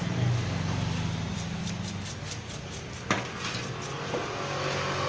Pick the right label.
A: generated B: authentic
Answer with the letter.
B